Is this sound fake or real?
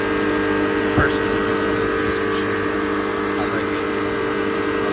real